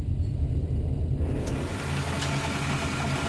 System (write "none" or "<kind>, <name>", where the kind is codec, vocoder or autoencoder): none